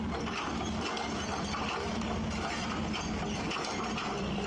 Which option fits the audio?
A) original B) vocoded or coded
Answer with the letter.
B